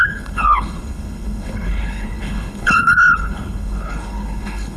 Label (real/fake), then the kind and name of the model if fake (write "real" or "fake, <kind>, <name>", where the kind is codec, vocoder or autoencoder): fake, codec, HILCodec